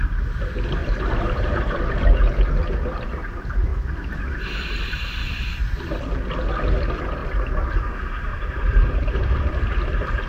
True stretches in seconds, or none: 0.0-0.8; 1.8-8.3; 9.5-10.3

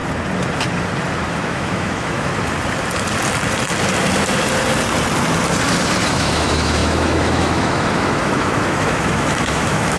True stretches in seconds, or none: 0.0-1.3; 2.3-6.1

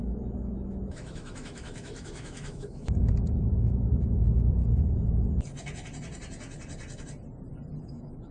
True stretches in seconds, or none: 4.6-7.8

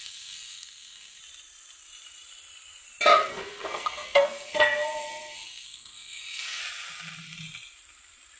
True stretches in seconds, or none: 1.2-3.3; 6.6-8.4

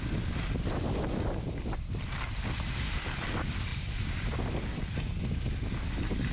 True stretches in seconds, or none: 0.0-6.3